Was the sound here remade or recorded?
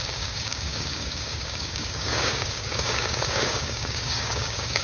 remade